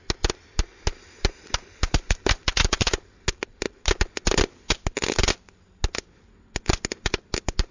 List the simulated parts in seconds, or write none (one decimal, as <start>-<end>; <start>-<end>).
0.9-3.1